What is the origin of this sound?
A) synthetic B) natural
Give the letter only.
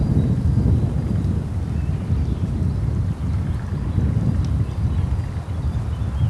B